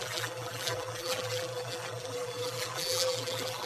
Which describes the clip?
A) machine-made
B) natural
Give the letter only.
A